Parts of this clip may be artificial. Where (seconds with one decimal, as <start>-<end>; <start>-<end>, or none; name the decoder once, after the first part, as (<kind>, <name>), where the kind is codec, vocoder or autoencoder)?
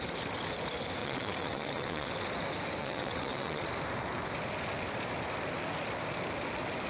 1.0-2.1 (vocoder, WaveNeXt); 2.8-3.6